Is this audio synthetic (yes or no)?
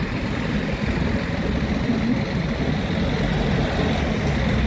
no